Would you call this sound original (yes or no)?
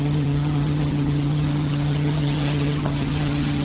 no